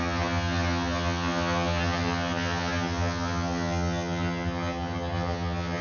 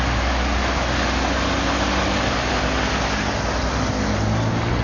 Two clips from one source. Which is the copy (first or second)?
first